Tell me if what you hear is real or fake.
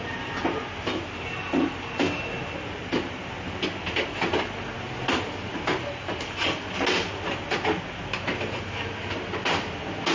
real